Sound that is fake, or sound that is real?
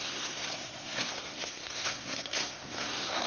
fake